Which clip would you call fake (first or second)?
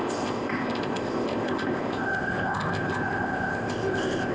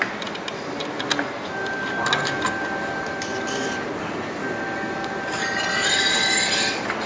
first